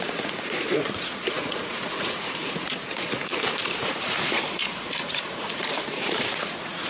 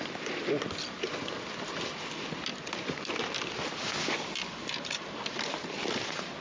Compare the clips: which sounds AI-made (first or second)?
first